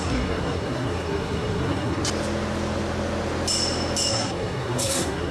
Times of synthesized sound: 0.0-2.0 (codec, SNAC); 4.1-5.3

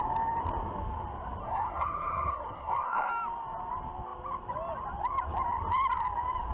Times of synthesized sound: 1.4-3.1 (codec, SNAC)